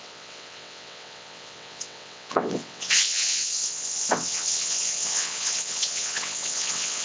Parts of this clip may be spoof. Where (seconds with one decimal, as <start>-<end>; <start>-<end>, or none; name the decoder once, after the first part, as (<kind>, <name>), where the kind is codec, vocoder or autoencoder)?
0.0-7.0 (vocoder, WaveNeXt)

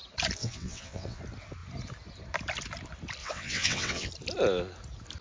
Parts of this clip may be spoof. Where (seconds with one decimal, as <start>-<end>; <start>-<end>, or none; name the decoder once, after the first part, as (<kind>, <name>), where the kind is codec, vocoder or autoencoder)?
0.4-1.2 (vocoder, WaveNeXt); 3.2-4.1

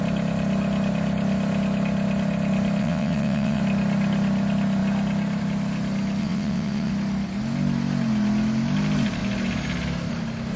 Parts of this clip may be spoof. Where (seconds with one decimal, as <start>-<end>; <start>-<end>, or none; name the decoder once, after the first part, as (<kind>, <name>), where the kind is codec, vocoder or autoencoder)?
2.8-3.6 (vocoder, WaveNeXt); 6.2-6.9

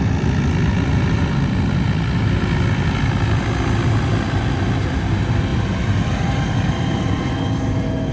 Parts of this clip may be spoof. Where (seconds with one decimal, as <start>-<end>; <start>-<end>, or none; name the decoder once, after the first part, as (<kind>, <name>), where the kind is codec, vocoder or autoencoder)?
none